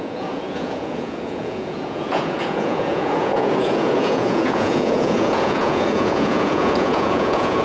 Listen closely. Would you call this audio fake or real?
fake